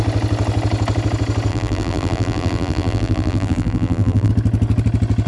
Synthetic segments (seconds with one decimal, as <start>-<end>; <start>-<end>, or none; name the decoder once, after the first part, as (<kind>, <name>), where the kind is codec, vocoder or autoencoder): 1.5-4.3 (vocoder, BigVGAN v2)